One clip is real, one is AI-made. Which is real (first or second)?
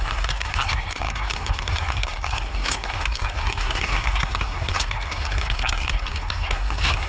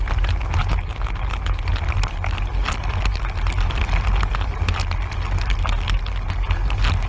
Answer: second